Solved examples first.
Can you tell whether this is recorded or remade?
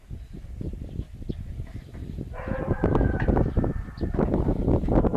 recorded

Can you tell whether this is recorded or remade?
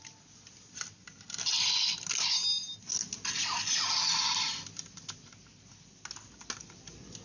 recorded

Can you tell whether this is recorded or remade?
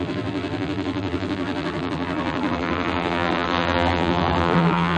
remade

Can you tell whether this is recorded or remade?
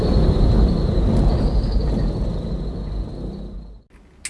recorded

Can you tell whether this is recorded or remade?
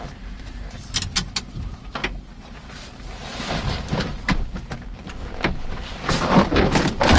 recorded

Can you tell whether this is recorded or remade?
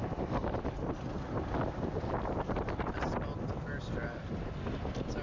recorded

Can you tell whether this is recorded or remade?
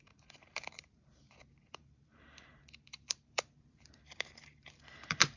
remade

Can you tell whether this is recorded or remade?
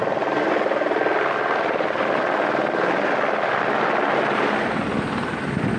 recorded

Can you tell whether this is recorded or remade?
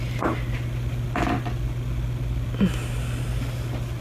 recorded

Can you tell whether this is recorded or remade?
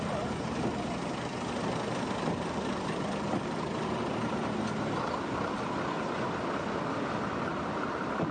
remade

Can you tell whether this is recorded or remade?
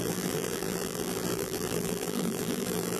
remade